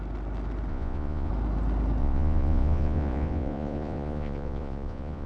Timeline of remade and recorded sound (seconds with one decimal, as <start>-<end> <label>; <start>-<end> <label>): 0.0-0.7 recorded; 0.7-1.3 remade; 1.3-2.0 recorded; 2.0-5.3 remade